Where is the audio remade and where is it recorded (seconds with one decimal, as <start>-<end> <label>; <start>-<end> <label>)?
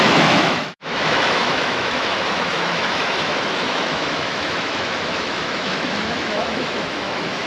0.0-7.5 remade